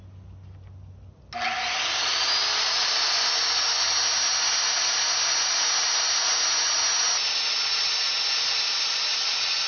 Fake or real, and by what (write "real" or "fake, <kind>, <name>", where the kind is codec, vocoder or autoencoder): real